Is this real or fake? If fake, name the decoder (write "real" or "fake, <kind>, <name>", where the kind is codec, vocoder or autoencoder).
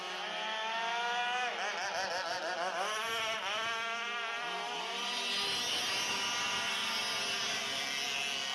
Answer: real